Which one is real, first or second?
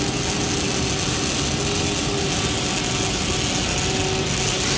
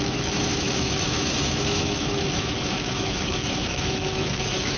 first